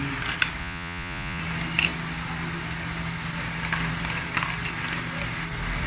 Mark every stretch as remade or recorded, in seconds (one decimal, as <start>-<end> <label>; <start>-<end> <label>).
0.0-0.6 recorded; 0.6-1.4 remade; 1.4-5.9 recorded